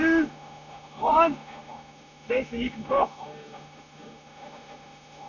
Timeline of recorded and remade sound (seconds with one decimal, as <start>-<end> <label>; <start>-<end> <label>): 0.0-5.3 remade